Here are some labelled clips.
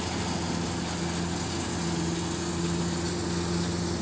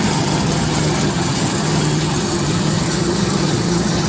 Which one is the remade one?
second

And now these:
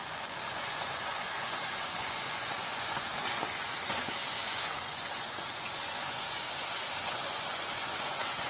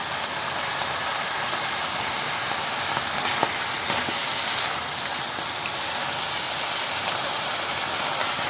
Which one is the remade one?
first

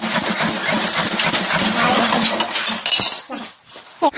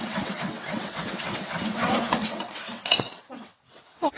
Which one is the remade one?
second